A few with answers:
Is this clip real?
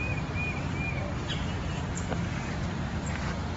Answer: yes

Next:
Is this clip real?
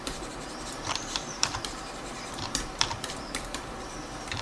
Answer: no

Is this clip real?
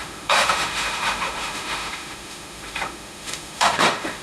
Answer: no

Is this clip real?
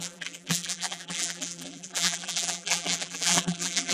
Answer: no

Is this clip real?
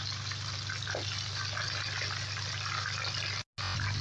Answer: yes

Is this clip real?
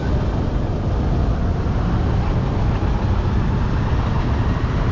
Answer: yes